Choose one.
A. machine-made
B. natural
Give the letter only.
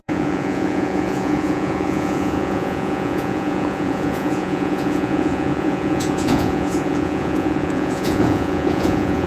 A